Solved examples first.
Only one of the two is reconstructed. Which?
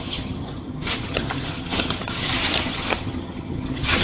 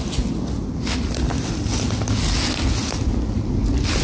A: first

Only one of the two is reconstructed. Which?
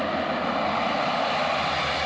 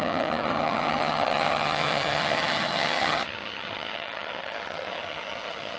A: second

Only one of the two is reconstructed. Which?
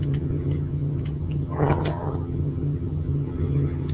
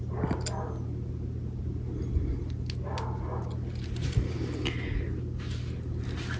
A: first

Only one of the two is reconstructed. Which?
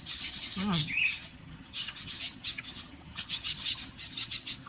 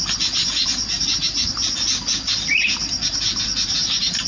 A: first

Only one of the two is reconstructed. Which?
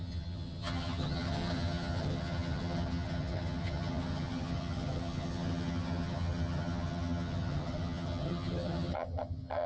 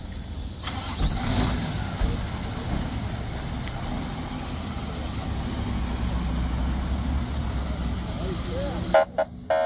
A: first